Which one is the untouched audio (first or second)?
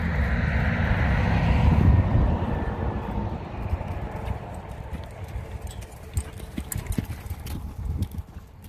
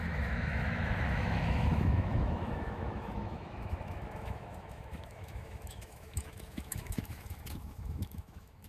first